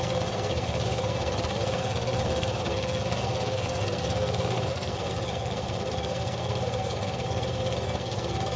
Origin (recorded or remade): remade